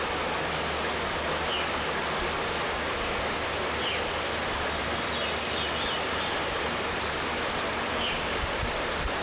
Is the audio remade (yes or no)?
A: no